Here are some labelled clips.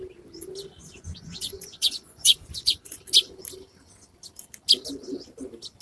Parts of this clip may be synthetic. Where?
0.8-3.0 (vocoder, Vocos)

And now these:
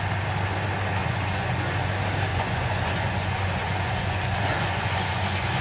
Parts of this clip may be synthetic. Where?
1.0-1.9 (vocoder, Vocos); 2.3-5.6

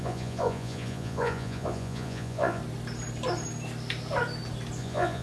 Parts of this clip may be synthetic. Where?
0.0-2.6 (vocoder, Vocos); 4.8-5.2